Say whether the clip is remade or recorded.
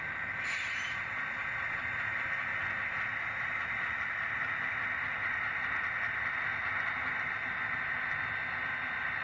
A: recorded